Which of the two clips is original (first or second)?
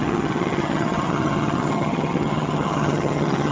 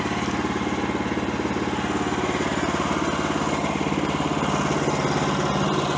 second